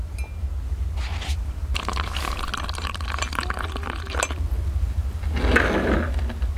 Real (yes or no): yes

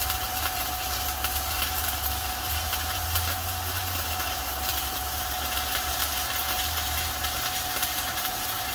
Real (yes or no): no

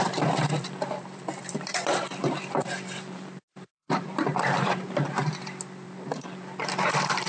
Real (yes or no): no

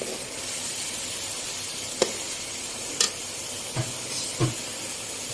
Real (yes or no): yes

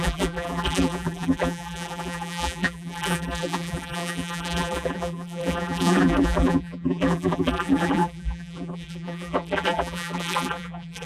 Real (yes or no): no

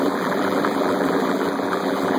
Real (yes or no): no